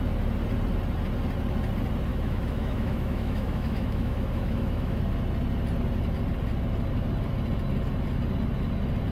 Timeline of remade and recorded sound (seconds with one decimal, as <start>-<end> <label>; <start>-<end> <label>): 0.0-2.1 recorded; 2.1-5.0 remade; 5.0-9.1 recorded